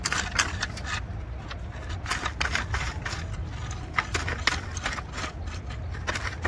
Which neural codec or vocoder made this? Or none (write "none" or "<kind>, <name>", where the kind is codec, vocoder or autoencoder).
none